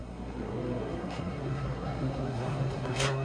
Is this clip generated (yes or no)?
yes